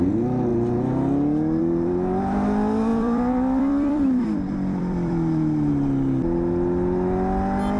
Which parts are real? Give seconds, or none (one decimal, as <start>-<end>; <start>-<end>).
0.0-2.9; 5.7-7.8